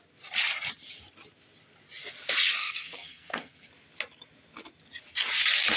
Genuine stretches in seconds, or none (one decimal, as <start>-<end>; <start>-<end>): 0.0-2.6; 3.7-5.8